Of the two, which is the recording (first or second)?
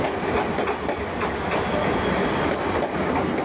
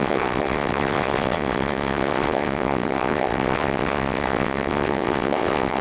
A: first